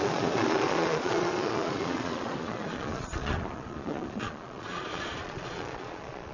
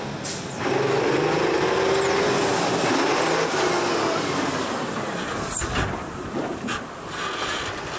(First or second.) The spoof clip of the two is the first